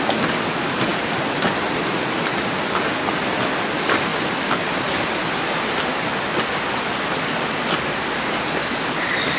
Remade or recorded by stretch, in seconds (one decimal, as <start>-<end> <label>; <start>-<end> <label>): 0.0-9.4 recorded